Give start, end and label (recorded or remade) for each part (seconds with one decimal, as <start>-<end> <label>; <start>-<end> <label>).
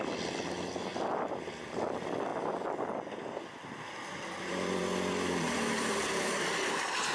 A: 0.0-0.9 remade; 0.9-1.6 recorded; 1.6-2.3 remade; 2.3-4.4 recorded; 4.4-7.1 remade